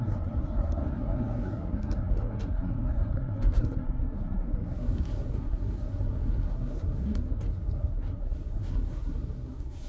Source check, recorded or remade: remade